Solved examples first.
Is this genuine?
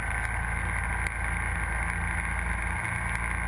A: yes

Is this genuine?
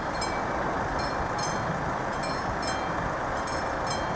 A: yes